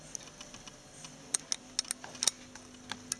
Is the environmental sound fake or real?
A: real